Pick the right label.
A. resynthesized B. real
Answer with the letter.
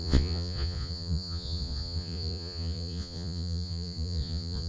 A